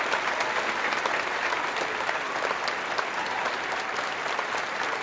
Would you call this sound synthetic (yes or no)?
no